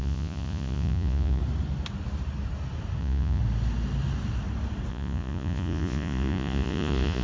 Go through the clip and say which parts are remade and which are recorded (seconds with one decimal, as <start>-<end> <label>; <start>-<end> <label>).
0.0-1.4 remade; 1.4-3.0 recorded; 3.0-3.4 remade; 3.4-4.9 recorded; 4.9-7.2 remade

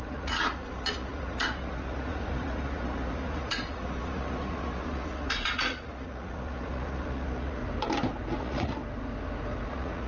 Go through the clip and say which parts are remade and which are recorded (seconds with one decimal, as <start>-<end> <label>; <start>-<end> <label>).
0.0-7.6 remade; 7.6-8.4 recorded; 8.4-8.8 remade; 8.8-9.7 recorded; 9.7-10.1 remade

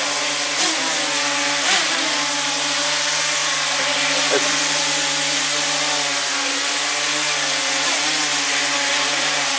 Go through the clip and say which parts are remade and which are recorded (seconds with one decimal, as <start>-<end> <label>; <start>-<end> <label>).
0.0-9.6 recorded

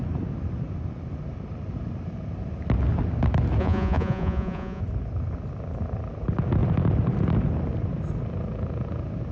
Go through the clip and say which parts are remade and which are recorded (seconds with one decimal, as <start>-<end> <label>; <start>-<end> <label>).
0.0-3.6 recorded; 3.6-4.8 remade; 4.8-9.3 recorded

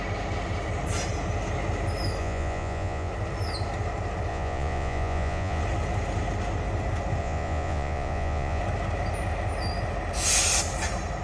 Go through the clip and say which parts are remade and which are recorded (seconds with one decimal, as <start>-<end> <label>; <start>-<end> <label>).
0.0-2.2 recorded; 2.2-3.1 remade; 3.1-4.3 recorded; 4.3-5.6 remade; 5.6-7.2 recorded; 7.2-8.6 remade; 8.6-11.2 recorded